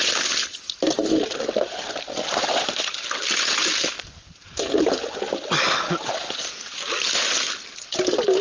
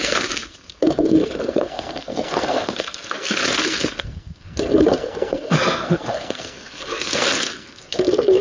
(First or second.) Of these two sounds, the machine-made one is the second